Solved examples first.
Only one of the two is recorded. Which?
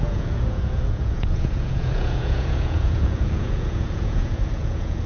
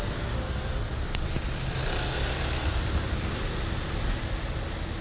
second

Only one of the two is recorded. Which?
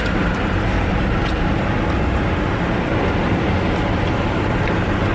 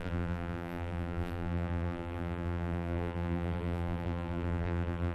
first